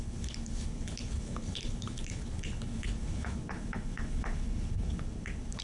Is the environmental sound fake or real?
fake